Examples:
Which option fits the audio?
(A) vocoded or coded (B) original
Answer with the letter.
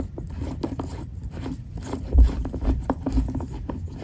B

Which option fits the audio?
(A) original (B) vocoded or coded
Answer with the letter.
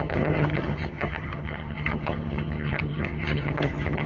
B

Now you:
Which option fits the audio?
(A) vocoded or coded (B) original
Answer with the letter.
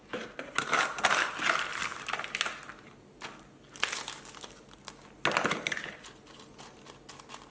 B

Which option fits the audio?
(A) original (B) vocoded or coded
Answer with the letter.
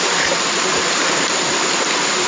A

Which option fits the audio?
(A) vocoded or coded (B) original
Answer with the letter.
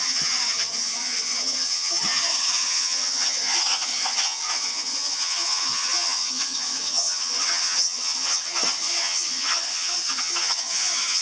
A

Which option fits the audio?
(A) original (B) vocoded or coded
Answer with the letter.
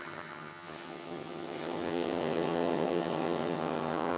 B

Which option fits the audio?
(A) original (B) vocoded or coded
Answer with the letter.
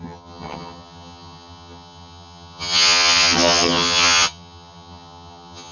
B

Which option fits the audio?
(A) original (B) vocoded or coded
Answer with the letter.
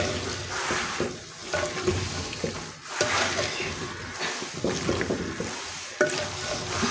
A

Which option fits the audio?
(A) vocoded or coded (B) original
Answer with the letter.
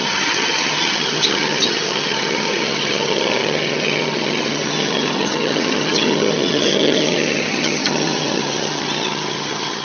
A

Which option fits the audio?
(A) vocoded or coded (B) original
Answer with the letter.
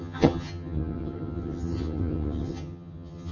A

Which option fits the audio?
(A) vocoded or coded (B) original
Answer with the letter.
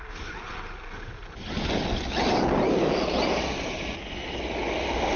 B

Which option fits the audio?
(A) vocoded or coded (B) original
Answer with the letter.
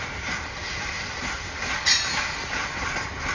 B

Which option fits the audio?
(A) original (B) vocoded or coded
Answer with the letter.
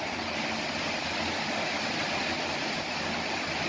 A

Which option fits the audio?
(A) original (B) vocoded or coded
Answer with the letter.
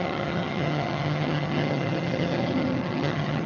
B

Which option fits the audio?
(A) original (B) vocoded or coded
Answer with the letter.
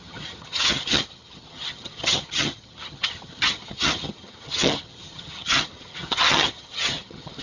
B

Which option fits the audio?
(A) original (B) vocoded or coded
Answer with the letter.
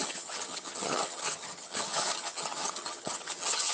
B